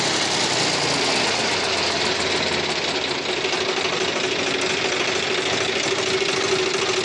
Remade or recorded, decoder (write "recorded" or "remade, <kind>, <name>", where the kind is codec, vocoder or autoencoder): recorded